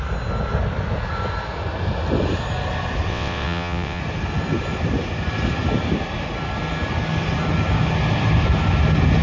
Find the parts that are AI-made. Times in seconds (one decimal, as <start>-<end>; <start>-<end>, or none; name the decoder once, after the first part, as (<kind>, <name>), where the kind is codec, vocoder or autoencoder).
3.1-4.0 (vocoder, WaveNeXt)